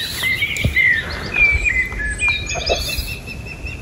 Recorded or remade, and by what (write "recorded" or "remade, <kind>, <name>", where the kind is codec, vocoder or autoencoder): recorded